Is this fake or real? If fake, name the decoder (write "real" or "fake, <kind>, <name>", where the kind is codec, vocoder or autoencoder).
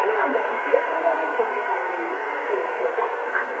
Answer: fake, codec, SNAC